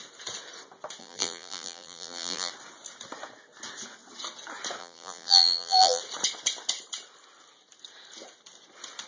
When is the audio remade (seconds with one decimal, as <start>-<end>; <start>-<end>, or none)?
1.0-2.5; 4.8-6.0